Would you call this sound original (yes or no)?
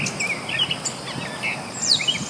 yes